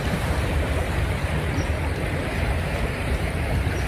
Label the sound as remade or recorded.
remade